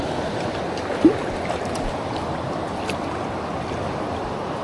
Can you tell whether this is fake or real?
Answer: real